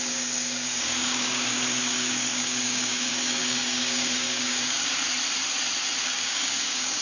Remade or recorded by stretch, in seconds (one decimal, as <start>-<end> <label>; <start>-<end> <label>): 0.0-5.0 remade; 5.0-6.0 recorded; 6.0-7.0 remade